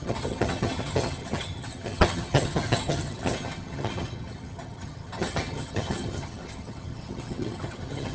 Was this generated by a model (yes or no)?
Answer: yes